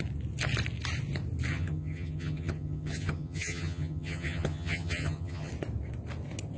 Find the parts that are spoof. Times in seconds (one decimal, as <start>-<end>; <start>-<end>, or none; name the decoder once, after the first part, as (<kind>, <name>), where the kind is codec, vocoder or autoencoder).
1.5-5.5 (vocoder, HiFi-GAN)